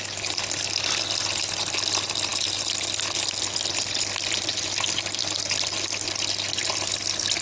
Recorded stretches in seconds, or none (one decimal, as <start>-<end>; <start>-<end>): 0.0-7.4